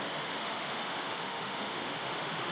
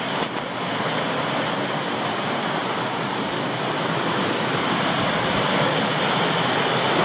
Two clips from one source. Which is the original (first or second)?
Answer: second